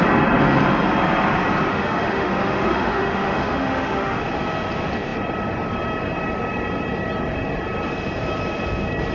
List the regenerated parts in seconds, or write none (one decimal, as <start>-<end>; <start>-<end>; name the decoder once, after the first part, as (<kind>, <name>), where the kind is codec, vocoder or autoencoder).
1.7-4.2 (autoencoder, DAC-VAE)